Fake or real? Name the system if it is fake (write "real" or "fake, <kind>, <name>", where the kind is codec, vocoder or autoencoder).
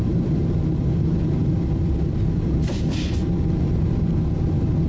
real